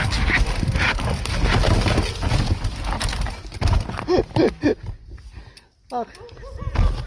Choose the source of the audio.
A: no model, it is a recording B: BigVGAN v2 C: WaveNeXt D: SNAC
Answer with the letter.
A